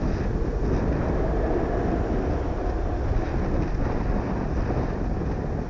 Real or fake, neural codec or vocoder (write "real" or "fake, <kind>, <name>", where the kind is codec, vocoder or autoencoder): real